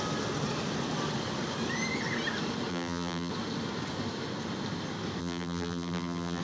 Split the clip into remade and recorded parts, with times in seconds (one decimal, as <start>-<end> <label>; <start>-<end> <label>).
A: 0.0-2.7 recorded; 2.7-3.3 remade; 3.3-5.2 recorded; 5.2-6.4 remade